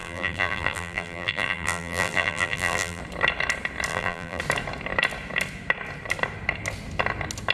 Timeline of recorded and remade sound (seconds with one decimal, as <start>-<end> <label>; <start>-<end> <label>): 0.0-3.0 remade; 3.0-3.9 recorded; 3.9-4.4 remade; 4.4-7.5 recorded